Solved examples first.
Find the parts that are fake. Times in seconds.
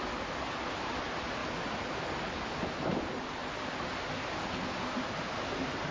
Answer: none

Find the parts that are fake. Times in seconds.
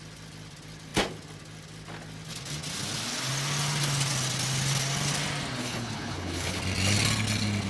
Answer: 5.6-6.6 (codec, HILCodec)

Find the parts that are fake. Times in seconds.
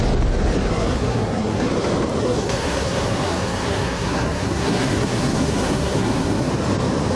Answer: 0.7-1.7 (codec, SNAC); 2.2-6.5